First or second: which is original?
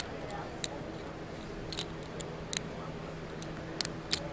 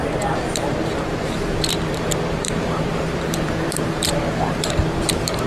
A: first